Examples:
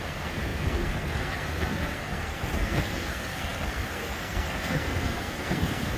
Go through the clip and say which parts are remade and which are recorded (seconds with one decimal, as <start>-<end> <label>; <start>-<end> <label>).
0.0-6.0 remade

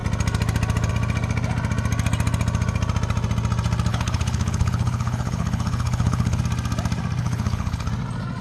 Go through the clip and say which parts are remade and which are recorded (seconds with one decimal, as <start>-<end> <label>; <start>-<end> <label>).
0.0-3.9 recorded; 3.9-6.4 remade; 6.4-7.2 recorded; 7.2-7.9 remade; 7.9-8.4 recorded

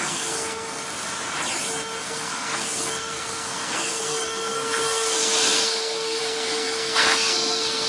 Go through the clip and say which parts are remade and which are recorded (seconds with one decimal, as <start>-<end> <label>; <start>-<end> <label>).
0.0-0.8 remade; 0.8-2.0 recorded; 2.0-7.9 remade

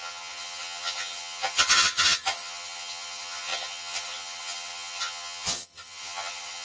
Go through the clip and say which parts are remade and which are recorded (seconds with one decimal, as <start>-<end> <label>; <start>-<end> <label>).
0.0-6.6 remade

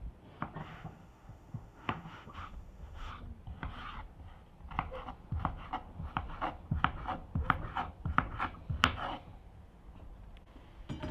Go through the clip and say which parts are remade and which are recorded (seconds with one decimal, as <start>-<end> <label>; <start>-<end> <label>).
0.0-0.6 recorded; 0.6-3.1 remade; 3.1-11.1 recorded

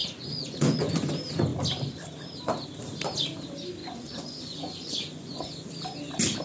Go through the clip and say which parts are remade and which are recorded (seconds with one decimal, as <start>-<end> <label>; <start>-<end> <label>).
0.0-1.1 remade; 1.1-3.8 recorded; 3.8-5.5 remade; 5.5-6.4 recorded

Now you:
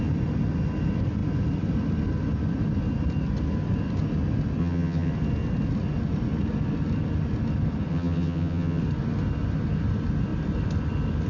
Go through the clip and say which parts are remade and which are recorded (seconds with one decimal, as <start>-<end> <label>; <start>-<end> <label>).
0.0-4.6 recorded; 4.6-5.1 remade; 5.1-7.9 recorded; 7.9-8.8 remade; 8.8-11.3 recorded

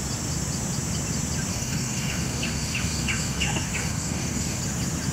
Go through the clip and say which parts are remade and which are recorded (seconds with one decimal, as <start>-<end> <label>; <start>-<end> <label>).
0.0-1.5 recorded; 1.5-4.6 remade; 4.6-5.1 recorded